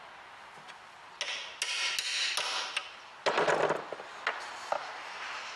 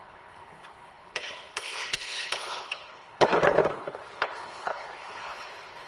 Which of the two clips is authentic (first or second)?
first